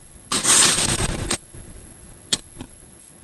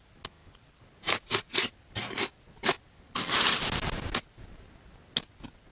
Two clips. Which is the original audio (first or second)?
second